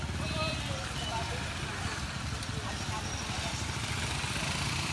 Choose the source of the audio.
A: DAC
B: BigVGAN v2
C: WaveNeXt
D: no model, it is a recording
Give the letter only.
D